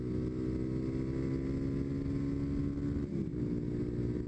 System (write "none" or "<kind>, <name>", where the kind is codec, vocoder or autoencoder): none